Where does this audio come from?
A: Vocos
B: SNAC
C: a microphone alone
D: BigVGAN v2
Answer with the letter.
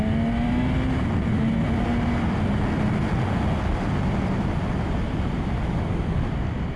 C